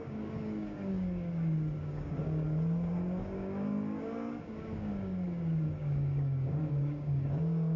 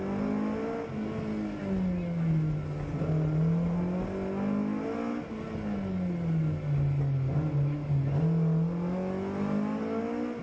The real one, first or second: second